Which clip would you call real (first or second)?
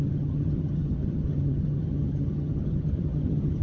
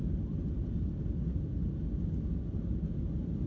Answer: second